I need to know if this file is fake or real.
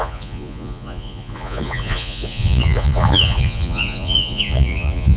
fake